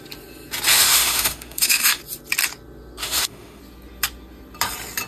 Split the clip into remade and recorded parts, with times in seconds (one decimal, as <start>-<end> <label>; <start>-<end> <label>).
0.0-0.7 recorded; 0.7-2.0 remade; 2.0-3.0 recorded; 3.0-3.6 remade; 3.6-5.1 recorded